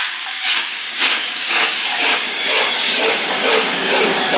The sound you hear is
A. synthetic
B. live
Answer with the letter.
A